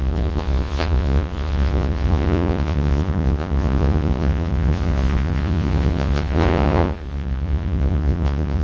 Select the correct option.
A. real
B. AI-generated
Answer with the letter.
B